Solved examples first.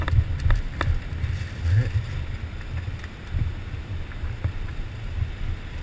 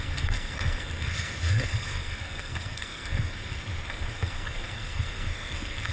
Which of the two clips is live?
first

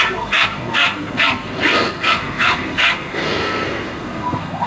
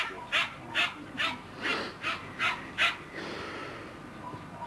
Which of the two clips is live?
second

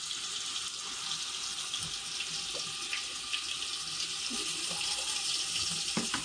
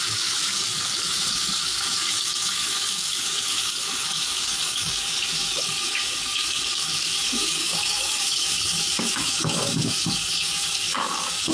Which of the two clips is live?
first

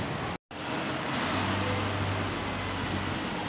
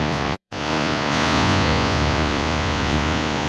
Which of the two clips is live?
first